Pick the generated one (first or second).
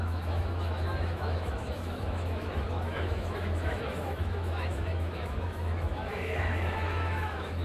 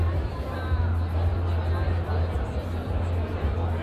first